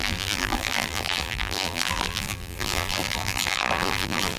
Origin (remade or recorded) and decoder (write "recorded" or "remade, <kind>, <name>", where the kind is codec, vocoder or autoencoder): remade, vocoder, BigVGAN v2